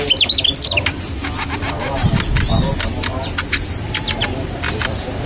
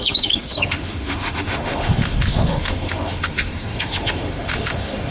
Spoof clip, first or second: second